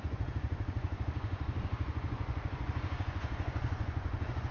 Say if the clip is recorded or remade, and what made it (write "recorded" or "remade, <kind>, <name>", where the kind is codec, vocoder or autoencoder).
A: remade, vocoder, Vocos